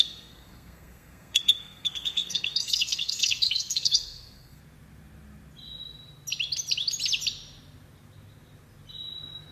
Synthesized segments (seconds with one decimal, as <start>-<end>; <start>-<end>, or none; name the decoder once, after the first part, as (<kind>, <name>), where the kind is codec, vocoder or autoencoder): 0.0-4.6 (codec, SNAC)